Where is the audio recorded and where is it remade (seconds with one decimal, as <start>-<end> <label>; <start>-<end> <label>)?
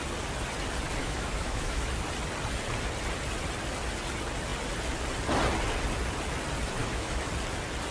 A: 0.0-1.0 recorded; 1.0-1.9 remade; 1.9-6.8 recorded; 6.8-7.3 remade; 7.3-7.9 recorded